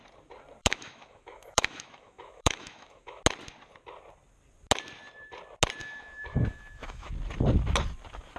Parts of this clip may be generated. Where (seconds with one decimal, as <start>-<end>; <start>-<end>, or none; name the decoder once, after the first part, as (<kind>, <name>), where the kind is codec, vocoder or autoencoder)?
0.6-3.2 (autoencoder, DAC-VAE); 5.8-7.1